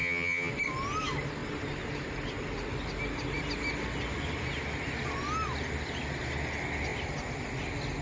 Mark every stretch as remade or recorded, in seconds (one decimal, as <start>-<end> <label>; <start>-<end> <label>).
0.0-0.5 remade; 0.5-8.0 recorded

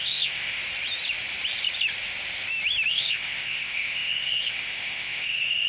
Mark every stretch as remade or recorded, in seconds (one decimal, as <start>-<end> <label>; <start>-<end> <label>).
0.0-0.6 remade; 0.6-2.9 recorded; 2.9-5.7 remade